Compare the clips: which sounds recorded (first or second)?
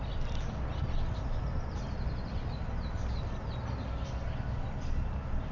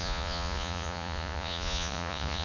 first